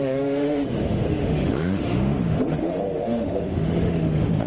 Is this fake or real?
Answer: fake